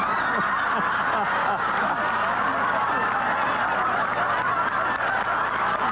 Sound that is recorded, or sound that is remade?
recorded